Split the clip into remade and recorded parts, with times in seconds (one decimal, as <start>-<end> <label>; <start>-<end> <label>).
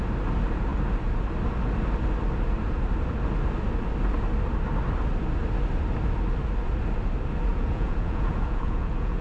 0.0-7.5 recorded; 7.5-9.2 remade